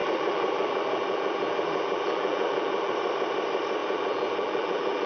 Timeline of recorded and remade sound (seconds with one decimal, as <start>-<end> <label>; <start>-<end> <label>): 0.0-2.9 remade; 2.9-3.8 recorded; 3.8-5.1 remade